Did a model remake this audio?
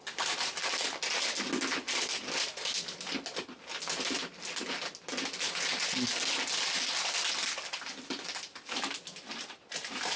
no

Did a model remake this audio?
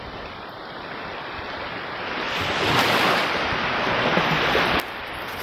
no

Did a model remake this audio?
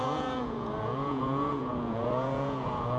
yes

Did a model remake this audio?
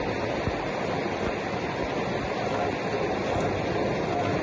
no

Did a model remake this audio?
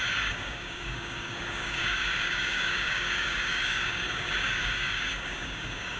yes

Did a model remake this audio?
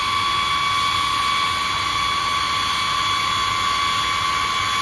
no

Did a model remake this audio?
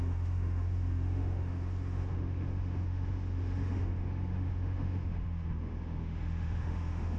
yes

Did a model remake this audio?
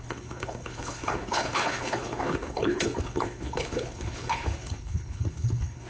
yes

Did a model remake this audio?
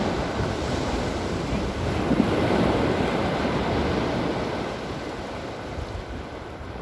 no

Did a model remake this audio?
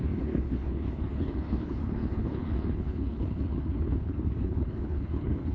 yes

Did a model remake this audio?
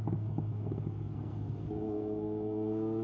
yes